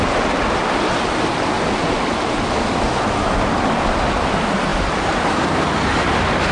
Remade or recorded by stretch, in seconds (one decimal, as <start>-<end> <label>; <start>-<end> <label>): 0.0-6.5 recorded